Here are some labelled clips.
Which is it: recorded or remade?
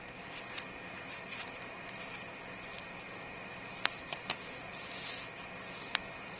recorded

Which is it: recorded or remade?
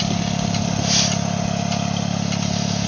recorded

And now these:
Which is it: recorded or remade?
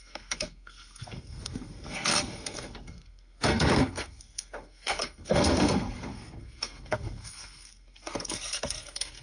remade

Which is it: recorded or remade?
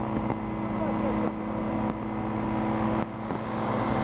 recorded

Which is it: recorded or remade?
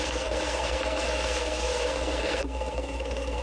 remade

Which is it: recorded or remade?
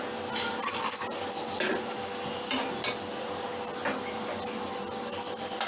recorded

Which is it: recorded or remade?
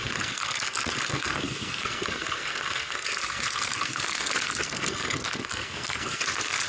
remade